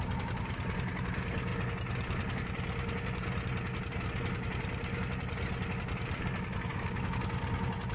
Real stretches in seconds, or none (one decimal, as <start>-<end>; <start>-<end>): 0.0-6.7; 7.2-7.9